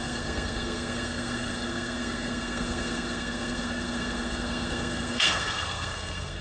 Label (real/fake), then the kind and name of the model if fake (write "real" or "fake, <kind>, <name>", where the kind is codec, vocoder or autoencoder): fake, codec, SNAC